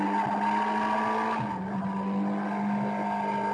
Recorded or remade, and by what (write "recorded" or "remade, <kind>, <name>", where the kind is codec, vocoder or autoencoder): recorded